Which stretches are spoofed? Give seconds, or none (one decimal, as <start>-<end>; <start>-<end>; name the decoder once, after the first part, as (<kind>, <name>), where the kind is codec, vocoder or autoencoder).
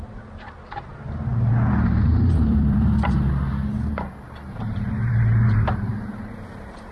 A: 2.1-3.3 (vocoder, BigVGAN v2); 4.5-5.9